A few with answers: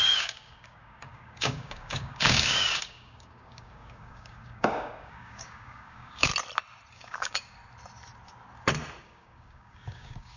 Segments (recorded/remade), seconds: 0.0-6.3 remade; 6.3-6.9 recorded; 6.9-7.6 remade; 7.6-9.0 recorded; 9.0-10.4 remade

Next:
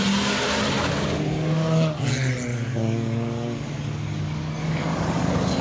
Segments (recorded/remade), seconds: 0.0-0.8 recorded; 0.8-2.0 remade; 2.0-2.5 recorded; 2.5-5.6 remade